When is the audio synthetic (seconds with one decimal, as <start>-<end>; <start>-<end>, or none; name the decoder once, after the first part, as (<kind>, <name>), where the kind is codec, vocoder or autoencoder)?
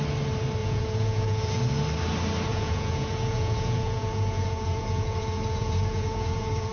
0.6-1.6 (vocoder, Vocos); 2.5-6.7